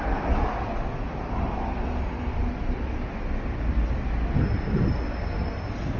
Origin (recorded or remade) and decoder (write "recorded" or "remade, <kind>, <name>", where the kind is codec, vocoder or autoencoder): recorded